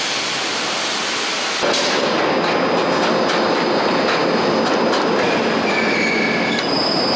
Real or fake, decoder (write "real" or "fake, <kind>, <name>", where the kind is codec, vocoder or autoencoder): real